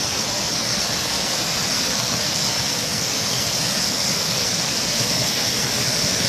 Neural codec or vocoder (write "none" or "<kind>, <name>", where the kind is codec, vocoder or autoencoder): codec, SNAC